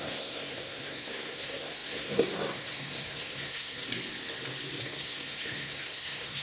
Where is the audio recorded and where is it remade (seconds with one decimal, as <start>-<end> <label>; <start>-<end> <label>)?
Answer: 0.0-3.8 remade; 3.8-4.8 recorded; 4.8-6.4 remade